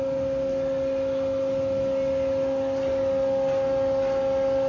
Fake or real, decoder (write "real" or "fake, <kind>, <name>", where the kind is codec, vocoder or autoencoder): real